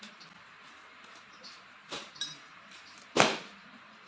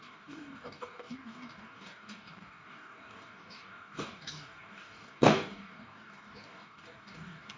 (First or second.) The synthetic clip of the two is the second